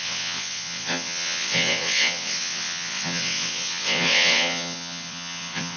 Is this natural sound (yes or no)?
no